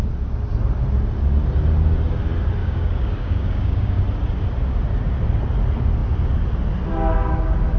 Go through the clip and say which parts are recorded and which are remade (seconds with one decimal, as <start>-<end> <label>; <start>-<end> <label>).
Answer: 0.0-2.6 recorded; 2.6-4.0 remade; 4.0-7.8 recorded